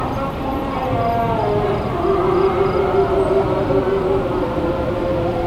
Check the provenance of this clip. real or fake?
real